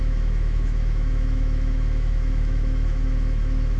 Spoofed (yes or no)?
yes